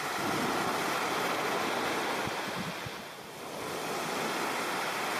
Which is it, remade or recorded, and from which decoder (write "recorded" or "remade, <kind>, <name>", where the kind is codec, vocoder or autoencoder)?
recorded